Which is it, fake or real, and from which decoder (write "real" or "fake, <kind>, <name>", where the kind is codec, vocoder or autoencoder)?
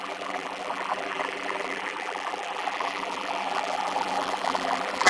fake, vocoder, BigVGAN v2